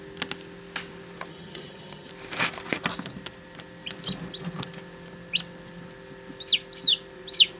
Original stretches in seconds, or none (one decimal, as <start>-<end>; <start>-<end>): 0.0-1.3; 2.1-7.6